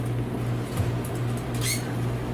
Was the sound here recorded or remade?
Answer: recorded